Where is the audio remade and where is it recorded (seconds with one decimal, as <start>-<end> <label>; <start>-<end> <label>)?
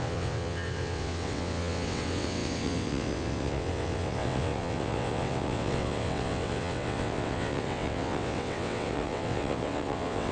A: 0.0-10.3 remade